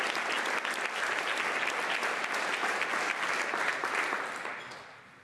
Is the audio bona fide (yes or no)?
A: yes